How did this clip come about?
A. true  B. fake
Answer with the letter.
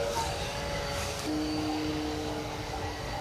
B